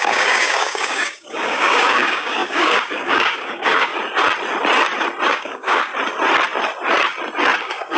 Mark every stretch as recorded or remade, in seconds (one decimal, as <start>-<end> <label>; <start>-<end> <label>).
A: 0.0-3.9 remade; 3.9-5.3 recorded; 5.3-5.9 remade; 5.9-7.6 recorded; 7.6-8.0 remade